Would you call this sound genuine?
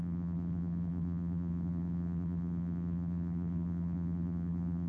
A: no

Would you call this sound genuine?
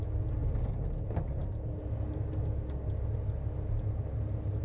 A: yes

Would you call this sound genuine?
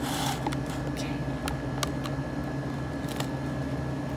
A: yes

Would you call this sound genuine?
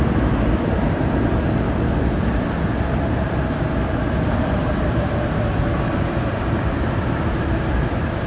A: no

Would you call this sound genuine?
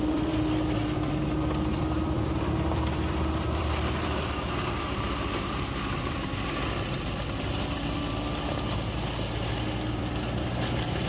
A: no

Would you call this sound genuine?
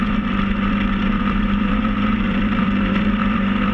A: no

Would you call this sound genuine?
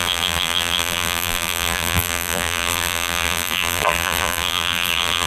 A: no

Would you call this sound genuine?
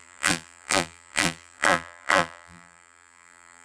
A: no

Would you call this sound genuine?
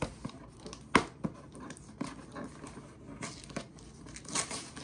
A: yes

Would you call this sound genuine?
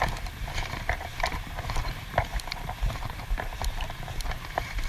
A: no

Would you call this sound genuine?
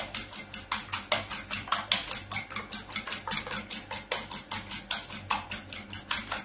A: yes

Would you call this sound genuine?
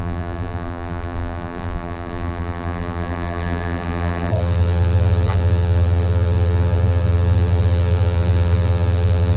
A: no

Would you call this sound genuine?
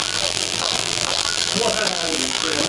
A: no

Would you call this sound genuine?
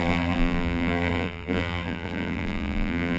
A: no